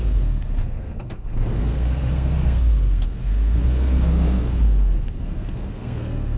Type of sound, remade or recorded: remade